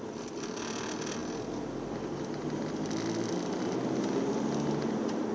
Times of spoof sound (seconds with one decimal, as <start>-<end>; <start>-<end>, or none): none